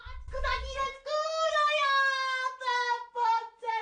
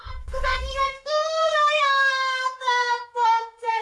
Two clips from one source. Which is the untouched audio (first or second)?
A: first